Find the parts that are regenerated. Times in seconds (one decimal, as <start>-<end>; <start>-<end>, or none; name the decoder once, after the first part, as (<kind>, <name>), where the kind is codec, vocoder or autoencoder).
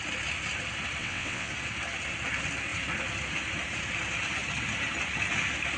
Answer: 1.0-1.5 (vocoder, WaveNeXt)